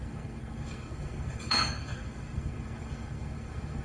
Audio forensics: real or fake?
fake